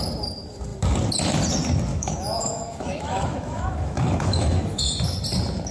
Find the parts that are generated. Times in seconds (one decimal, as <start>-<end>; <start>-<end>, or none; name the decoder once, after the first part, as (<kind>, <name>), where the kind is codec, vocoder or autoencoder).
1.9-5.0 (autoencoder, DAC-VAE)

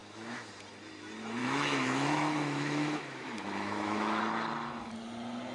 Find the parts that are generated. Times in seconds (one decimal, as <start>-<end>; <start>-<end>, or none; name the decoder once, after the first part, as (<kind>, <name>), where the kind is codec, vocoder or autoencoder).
0.0-0.5 (autoencoder, DAC-VAE); 1.4-4.2

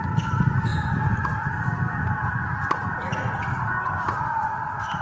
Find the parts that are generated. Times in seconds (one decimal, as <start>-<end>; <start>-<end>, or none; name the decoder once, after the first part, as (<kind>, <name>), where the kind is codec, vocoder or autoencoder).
none

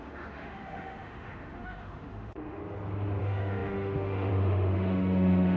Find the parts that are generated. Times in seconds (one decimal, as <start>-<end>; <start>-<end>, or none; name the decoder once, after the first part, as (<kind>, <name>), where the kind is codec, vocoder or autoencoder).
0.0-2.6 (autoencoder, DAC-VAE); 3.2-5.6

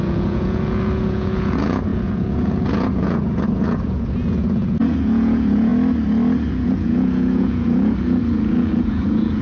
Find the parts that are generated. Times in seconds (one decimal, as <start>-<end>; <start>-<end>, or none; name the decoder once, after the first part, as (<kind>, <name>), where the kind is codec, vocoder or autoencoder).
0.0-5.7 (vocoder, Vocos); 6.5-9.4

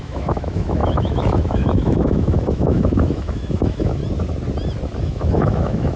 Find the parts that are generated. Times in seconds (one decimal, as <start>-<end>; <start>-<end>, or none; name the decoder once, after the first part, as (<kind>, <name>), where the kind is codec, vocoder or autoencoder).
0.0-4.0 (autoencoder, DAC-VAE); 5.0-6.0

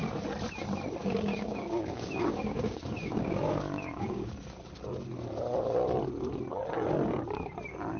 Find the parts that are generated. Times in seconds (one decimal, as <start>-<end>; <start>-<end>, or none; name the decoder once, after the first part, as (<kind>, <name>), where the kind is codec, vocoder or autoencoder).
1.0-4.3 (codec, DAC)

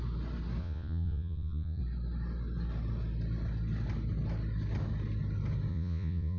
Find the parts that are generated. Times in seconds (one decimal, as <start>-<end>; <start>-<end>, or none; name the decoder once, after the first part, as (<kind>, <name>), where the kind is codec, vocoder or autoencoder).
0.6-1.8 (vocoder, Vocos); 5.7-6.4